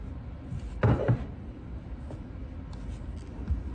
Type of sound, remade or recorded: recorded